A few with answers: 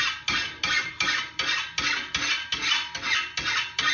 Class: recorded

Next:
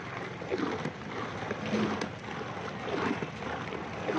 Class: recorded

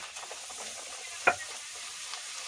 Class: recorded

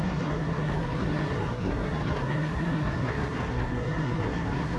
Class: remade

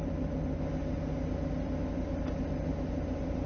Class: recorded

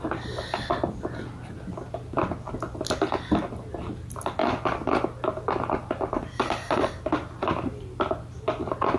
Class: recorded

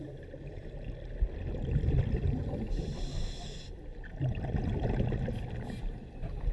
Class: recorded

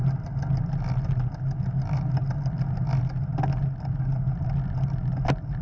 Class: recorded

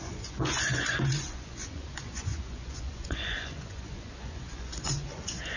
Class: remade